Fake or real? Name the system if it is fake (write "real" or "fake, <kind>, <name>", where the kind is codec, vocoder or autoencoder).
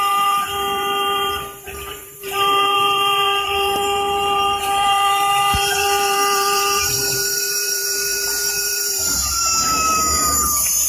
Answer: fake, vocoder, BigVGAN v2